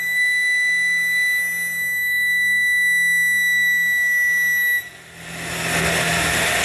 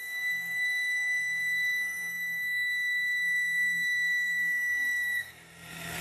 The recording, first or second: first